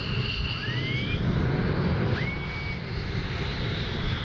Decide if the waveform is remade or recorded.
recorded